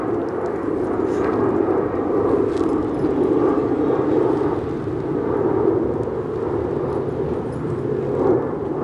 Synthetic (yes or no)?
no